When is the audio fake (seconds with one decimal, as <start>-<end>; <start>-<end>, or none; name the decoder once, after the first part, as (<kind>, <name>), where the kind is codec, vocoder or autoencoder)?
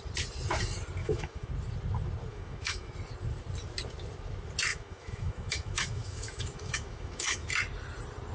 1.0-1.5 (autoencoder, DAC-VAE); 2.3-2.9; 4.7-7.5